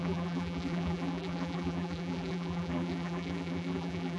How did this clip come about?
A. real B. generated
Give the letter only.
B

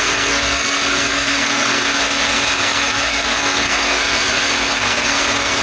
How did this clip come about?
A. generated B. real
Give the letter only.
A